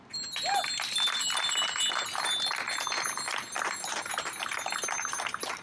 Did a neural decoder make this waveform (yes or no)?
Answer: no